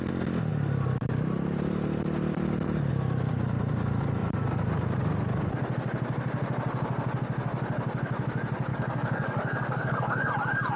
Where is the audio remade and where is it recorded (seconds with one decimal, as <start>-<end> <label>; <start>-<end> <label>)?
0.0-8.7 recorded; 8.7-10.3 remade; 10.3-10.8 recorded